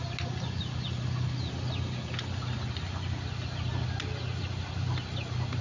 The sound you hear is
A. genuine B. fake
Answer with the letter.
A